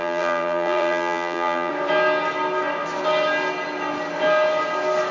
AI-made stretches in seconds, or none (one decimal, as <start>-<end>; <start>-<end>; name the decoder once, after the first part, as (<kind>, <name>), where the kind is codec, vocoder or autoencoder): 0.0-1.7 (vocoder, BigVGAN v2)

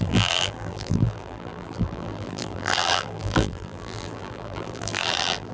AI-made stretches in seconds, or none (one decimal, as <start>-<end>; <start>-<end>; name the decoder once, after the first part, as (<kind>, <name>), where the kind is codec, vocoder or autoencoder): 0.0-5.5 (vocoder, BigVGAN v2)

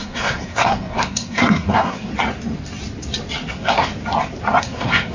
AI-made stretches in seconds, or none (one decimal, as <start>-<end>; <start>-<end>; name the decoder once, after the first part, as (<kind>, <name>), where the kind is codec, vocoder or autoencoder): 0.0-2.1 (codec, SNAC); 3.5-3.9; 4.6-5.1

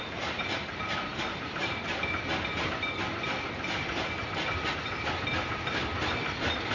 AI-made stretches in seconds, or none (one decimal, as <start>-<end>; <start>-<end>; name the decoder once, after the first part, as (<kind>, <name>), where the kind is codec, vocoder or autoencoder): none